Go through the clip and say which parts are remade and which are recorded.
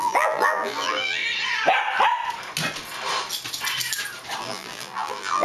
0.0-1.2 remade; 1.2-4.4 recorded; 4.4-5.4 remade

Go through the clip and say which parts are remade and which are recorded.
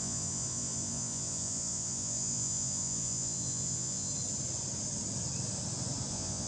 0.0-4.1 remade; 4.1-6.1 recorded; 6.1-6.5 remade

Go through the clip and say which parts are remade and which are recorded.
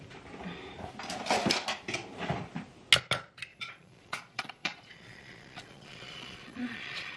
0.0-3.5 recorded; 3.5-7.2 remade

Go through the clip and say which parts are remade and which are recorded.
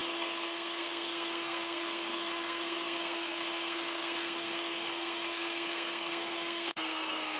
0.0-7.4 remade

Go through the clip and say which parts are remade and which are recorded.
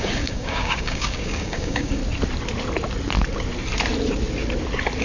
0.0-2.0 remade; 2.0-5.0 recorded